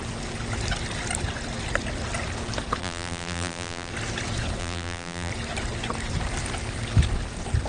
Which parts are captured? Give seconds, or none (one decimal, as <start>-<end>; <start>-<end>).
0.0-2.8; 3.9-4.6; 5.3-7.7